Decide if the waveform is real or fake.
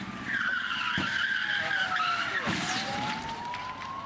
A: real